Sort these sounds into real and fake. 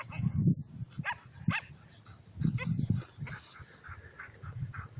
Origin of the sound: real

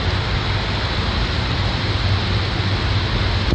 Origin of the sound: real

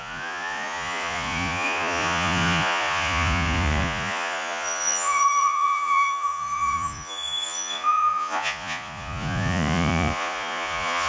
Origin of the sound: fake